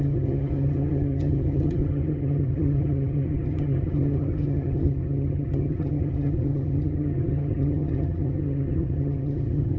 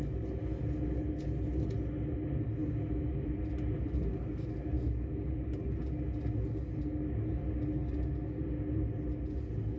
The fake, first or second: first